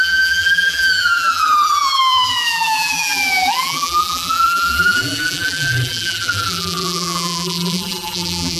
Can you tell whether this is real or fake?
fake